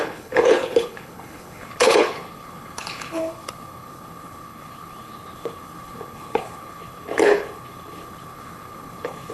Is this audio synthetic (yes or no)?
yes